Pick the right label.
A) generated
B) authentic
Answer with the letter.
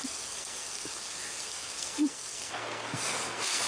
A